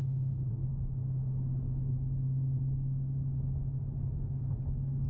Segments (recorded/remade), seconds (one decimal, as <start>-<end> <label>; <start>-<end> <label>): 0.0-5.1 recorded